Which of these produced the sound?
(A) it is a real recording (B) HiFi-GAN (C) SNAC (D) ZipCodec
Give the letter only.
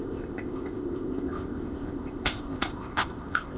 D